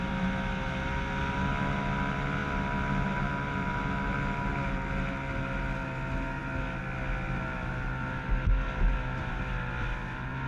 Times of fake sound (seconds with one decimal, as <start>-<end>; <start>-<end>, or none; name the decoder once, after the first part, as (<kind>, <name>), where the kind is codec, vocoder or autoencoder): none